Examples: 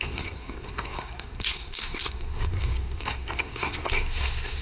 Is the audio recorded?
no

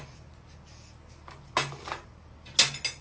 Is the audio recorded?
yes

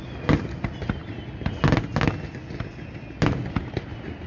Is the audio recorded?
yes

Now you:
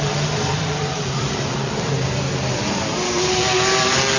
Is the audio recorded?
no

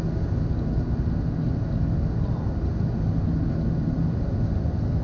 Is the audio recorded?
yes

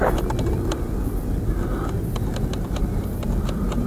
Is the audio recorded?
yes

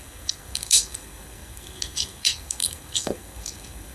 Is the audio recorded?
no